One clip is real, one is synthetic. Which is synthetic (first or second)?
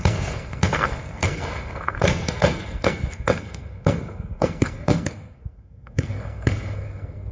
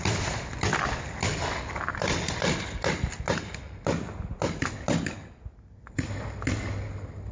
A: first